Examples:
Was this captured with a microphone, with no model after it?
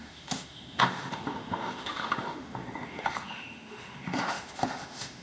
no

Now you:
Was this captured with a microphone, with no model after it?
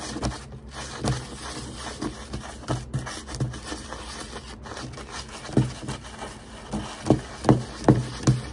yes